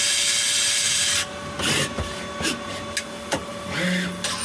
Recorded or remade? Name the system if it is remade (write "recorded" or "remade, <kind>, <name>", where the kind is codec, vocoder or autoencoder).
recorded